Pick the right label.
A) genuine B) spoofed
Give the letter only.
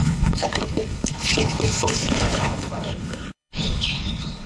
B